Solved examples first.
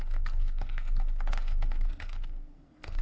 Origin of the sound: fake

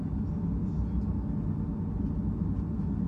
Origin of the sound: real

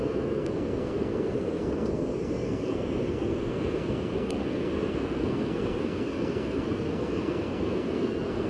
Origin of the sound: fake